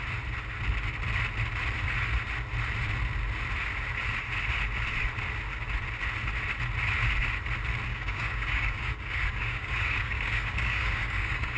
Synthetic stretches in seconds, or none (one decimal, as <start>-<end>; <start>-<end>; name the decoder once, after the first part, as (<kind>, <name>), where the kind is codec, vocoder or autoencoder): 7.9-11.6 (codec, DAC)